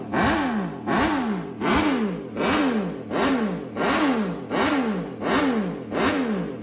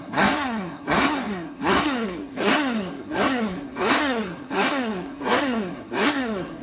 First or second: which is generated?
second